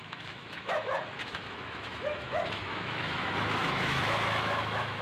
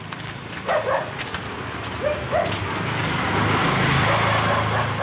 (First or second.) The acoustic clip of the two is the second